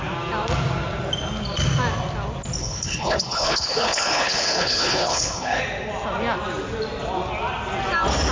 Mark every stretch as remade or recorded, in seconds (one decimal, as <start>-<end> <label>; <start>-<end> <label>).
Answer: 0.0-2.6 recorded; 2.6-5.6 remade; 5.6-8.3 recorded